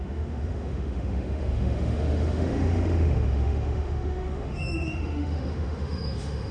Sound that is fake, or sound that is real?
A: fake